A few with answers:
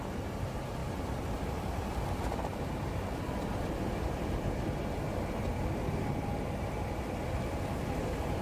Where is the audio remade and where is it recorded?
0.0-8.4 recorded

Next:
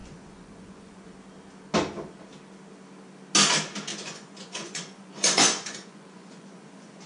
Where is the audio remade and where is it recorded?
0.0-1.1 remade; 1.1-3.9 recorded; 3.9-7.1 remade

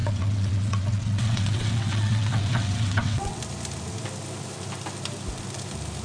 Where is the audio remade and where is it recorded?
0.0-3.4 remade; 3.4-6.0 recorded